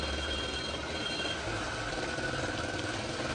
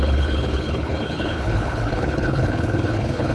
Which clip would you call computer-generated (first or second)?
second